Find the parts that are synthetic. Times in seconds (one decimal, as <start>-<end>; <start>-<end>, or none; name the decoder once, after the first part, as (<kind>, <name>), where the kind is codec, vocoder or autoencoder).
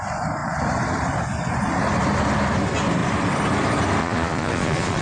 4.0-5.0 (vocoder, Vocos)